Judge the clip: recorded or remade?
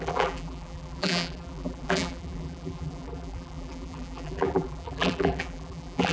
remade